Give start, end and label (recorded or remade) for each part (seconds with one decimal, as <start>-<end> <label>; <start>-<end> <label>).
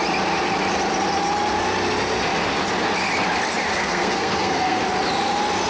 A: 0.0-3.6 recorded; 3.6-4.8 remade; 4.8-5.7 recorded